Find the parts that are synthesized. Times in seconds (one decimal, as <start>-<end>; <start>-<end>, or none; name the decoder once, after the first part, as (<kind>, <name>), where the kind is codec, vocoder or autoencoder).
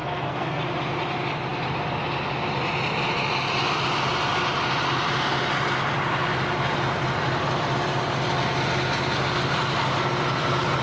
0.0-0.6 (codec, SNAC)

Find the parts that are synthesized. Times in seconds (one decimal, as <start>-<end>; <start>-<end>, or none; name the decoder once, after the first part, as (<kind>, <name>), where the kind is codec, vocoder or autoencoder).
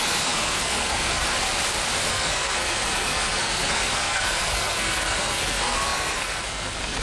0.0-1.2 (codec, SNAC); 2.1-7.0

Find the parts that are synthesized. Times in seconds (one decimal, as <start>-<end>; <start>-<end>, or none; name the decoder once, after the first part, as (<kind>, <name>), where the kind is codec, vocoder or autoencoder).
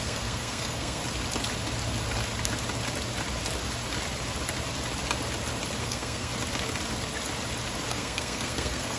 0.0-1.0 (codec, SNAC); 5.8-6.3; 7.9-9.0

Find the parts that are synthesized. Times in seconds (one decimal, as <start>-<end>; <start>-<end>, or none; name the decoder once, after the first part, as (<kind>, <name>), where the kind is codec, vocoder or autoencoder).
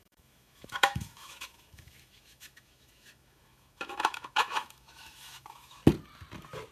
0.0-5.8 (autoencoder, DAC-VAE)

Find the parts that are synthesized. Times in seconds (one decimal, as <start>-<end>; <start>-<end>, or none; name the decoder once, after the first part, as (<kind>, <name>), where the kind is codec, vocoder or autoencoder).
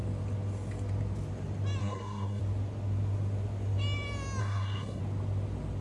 1.8-2.4 (codec, SNAC); 4.4-5.0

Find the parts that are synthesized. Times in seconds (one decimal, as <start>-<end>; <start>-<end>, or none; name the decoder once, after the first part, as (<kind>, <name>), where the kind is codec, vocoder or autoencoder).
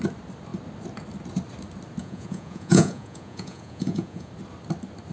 2.0-4.3 (vocoder, Vocos)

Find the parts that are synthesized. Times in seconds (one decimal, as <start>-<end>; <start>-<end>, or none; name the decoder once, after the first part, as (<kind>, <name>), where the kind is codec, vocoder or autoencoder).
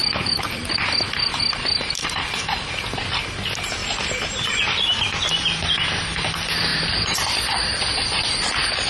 0.0-2.3 (vocoder, BigVGAN v2); 3.8-4.5